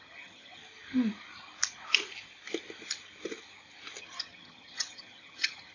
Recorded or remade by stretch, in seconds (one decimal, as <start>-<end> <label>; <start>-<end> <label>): 0.0-0.6 remade; 0.6-4.0 recorded; 4.0-5.7 remade